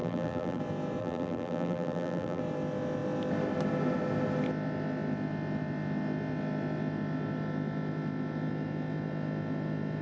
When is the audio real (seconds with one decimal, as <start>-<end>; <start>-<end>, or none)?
0.6-1.0; 2.4-10.0